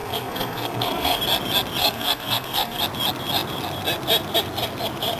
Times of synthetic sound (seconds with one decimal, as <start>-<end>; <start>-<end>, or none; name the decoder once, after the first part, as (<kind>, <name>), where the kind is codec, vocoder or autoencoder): 0.0-1.2 (codec, SNAC); 1.8-2.8